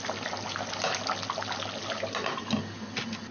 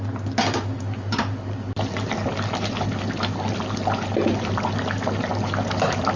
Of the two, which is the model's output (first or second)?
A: second